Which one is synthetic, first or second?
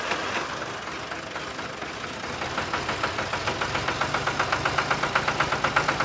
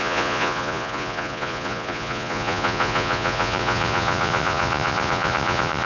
second